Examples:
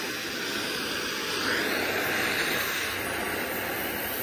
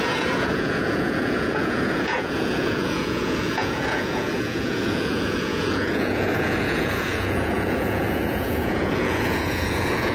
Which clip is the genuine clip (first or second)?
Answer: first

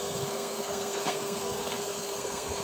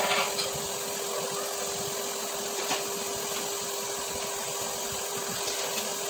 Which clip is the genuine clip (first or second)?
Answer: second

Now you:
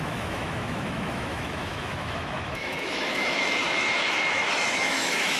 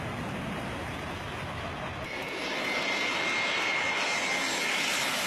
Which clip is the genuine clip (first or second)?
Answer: second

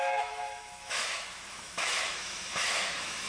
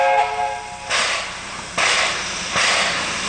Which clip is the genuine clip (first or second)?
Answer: second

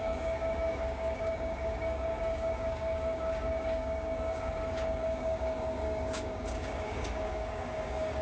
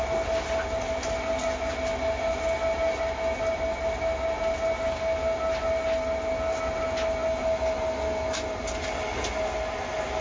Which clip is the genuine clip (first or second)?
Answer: second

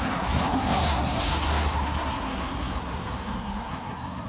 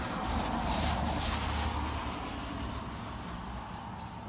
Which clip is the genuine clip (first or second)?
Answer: second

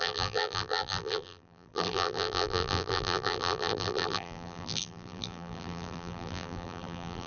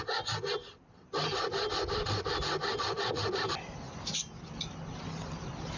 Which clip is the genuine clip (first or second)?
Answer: second